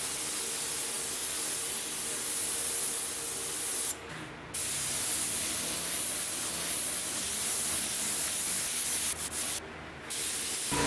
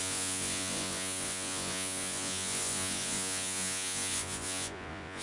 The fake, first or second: second